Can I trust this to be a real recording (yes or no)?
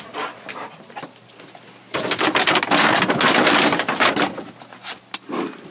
yes